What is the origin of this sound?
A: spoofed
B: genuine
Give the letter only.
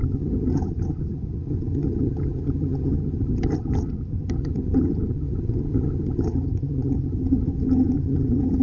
A